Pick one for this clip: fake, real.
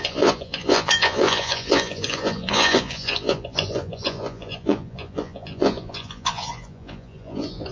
fake